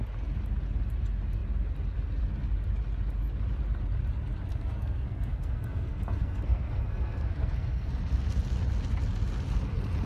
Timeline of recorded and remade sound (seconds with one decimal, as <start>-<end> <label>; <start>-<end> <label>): 0.0-4.5 recorded; 4.5-7.9 remade; 7.9-10.1 recorded